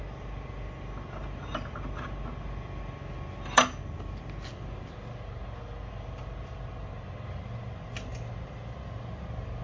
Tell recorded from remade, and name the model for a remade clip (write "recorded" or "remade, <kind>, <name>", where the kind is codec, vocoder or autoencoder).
recorded